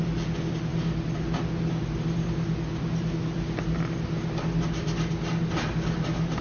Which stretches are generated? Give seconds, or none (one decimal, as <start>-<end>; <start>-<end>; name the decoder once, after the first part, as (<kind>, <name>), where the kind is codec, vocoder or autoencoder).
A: none